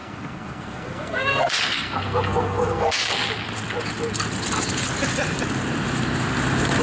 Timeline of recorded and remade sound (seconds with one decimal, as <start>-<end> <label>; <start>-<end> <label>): 0.0-3.2 remade; 3.2-6.8 recorded